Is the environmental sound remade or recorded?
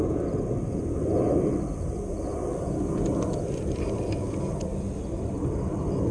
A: recorded